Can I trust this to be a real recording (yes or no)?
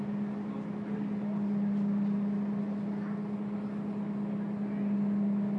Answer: yes